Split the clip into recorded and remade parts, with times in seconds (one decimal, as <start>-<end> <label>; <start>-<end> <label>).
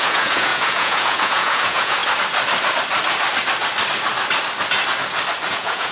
0.0-2.0 remade; 2.0-5.5 recorded; 5.5-5.9 remade